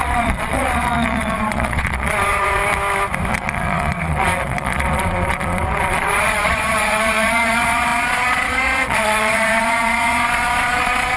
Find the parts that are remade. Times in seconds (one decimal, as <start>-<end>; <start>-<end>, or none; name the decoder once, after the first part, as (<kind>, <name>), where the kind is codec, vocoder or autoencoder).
0.0-2.6 (vocoder, Vocos); 3.3-11.2